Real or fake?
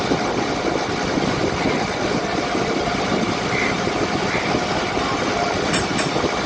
real